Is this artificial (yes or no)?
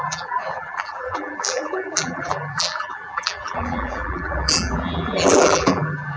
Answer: yes